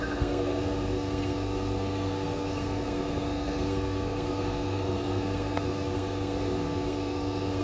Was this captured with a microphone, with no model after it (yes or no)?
no